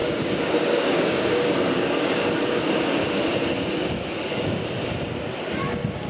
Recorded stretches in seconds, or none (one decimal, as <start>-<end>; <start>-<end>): 2.3-3.8; 4.8-6.1